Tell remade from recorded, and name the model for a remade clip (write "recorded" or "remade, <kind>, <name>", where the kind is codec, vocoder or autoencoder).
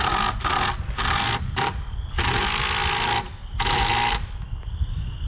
recorded